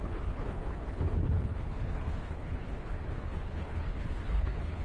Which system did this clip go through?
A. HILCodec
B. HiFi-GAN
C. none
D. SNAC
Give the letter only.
A